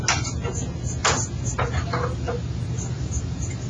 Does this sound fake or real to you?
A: real